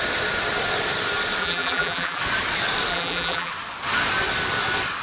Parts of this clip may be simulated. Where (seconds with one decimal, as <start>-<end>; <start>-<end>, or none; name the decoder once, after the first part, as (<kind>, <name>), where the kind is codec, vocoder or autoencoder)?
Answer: 1.4-2.2 (vocoder, BigVGAN v2); 2.9-3.5

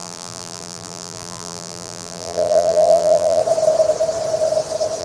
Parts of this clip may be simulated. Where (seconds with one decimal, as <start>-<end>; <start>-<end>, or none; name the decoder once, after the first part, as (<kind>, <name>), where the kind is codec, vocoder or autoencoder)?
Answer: 0.0-3.4 (vocoder, BigVGAN v2)

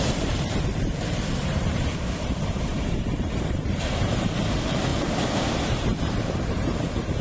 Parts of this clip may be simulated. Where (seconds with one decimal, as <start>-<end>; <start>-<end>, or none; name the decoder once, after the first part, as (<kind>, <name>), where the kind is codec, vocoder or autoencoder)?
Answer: 0.0-4.9 (vocoder, BigVGAN v2); 5.6-7.2

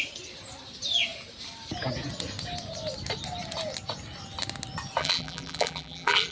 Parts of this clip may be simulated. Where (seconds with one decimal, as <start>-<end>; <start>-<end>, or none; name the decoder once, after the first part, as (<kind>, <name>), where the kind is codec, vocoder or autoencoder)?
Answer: 5.0-6.3 (vocoder, BigVGAN v2)

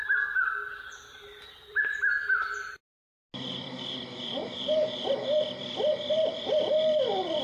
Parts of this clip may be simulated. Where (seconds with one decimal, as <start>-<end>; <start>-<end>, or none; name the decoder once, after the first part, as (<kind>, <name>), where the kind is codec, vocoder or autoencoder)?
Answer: 0.0-2.9 (vocoder, BigVGAN v2); 3.6-7.4

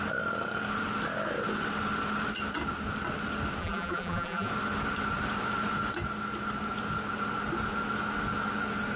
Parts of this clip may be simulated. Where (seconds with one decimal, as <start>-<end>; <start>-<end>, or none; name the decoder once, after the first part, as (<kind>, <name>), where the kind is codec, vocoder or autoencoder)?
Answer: 3.6-4.5 (vocoder, BigVGAN v2)

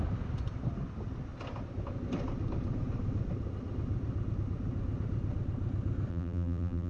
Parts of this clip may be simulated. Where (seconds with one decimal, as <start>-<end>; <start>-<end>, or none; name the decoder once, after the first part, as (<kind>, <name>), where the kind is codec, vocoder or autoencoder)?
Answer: 6.1-6.9 (vocoder, BigVGAN v2)